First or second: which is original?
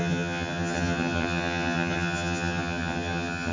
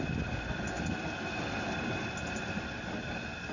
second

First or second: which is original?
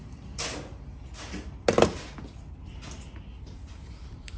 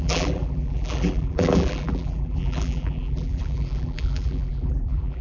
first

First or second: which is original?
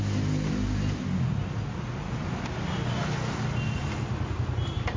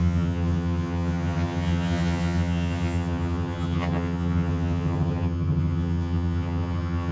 first